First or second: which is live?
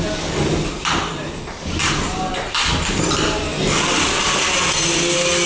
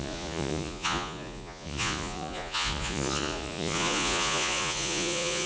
first